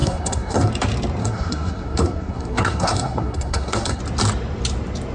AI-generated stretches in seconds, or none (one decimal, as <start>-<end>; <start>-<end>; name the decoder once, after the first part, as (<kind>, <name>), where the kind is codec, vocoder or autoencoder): 0.0-0.7 (codec, SNAC); 1.2-4.0